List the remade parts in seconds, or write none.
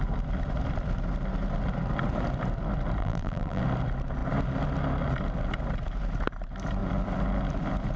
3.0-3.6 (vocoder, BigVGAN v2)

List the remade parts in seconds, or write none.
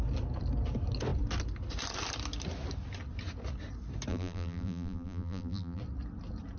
4.1-5.8 (vocoder, BigVGAN v2)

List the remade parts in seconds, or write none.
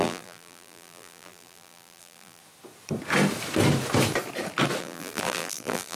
0.0-2.4 (vocoder, BigVGAN v2); 4.8-6.0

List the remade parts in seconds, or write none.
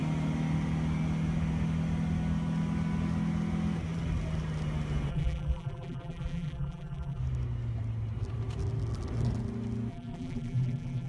5.1-7.2 (vocoder, BigVGAN v2); 9.9-11.1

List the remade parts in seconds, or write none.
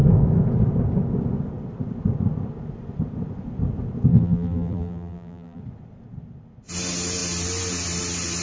4.1-5.6 (vocoder, BigVGAN v2)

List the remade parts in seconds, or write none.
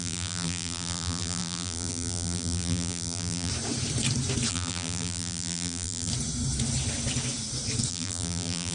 0.0-3.5 (vocoder, BigVGAN v2); 4.5-6.1; 7.9-8.7